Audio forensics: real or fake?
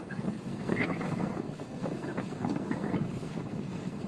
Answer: fake